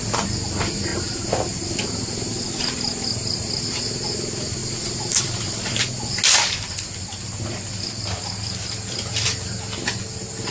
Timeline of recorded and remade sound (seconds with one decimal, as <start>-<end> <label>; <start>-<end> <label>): 0.0-10.5 recorded